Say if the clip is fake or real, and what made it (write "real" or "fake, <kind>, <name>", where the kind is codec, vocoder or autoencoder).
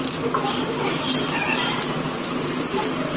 real